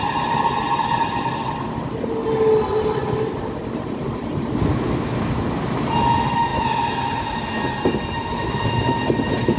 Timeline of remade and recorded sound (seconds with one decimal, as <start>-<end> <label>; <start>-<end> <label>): 0.0-9.6 recorded

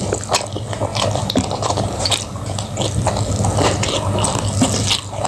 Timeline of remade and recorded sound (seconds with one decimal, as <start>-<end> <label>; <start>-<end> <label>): 0.0-5.3 recorded